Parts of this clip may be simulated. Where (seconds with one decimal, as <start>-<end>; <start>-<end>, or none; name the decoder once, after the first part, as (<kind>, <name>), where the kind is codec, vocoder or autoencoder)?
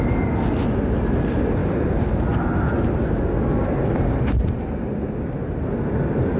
none